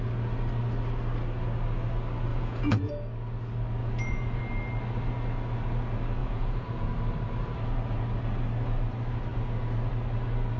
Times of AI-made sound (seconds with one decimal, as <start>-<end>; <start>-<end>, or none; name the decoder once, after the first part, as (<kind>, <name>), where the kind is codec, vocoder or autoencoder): 2.3-2.9 (vocoder, Vocos); 3.8-4.4; 6.2-6.9